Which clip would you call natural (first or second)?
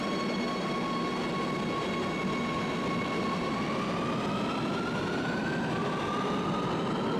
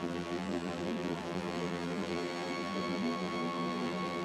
first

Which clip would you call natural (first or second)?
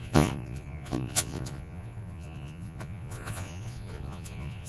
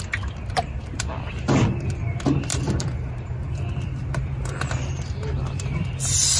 second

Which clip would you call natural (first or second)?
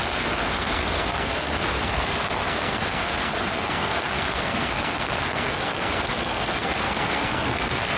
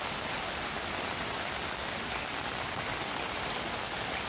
second